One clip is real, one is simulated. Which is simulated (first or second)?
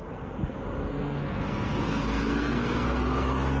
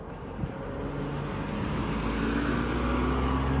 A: first